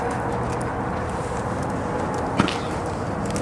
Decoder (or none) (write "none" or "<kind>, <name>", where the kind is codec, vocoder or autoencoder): none